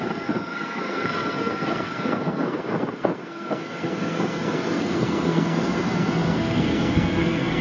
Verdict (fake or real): fake